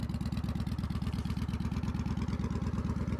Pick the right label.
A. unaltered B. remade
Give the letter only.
A